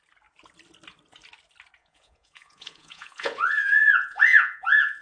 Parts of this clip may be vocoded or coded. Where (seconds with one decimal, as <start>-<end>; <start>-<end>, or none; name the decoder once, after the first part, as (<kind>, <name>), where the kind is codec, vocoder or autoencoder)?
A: 1.8-5.0 (vocoder, Vocos)